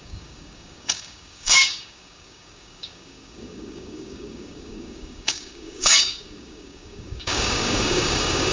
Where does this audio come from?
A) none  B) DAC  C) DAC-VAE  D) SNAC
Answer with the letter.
B